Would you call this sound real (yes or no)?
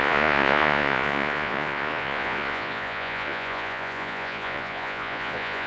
no